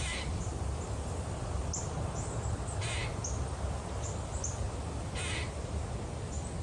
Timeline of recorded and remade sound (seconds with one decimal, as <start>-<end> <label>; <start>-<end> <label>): 0.0-6.6 recorded